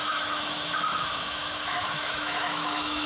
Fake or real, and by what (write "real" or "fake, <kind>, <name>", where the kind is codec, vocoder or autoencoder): fake, autoencoder, DAC-VAE